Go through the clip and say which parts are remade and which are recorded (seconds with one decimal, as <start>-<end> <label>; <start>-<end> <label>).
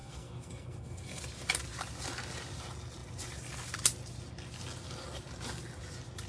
0.0-1.2 remade; 1.2-6.3 recorded